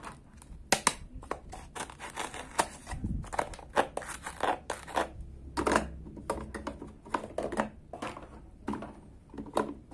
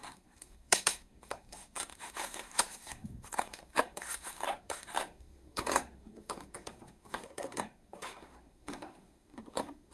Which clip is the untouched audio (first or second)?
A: first